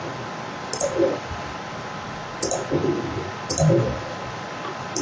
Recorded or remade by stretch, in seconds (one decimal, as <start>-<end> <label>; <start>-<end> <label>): 0.0-5.0 recorded